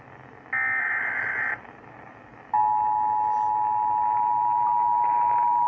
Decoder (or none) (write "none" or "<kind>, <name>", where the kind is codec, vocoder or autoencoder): none